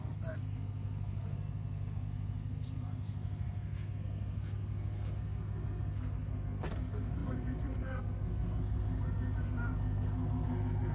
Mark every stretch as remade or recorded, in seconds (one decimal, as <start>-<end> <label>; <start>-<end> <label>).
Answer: 0.0-10.9 remade